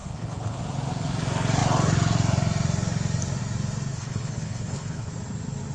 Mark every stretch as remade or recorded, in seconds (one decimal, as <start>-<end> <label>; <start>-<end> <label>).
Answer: 0.0-0.6 remade; 0.6-3.9 recorded; 3.9-5.1 remade; 5.1-5.7 recorded